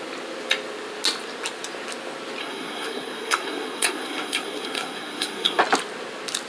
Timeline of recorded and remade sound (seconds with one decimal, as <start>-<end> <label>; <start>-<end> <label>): 0.0-2.4 recorded; 2.4-5.6 remade; 5.6-6.5 recorded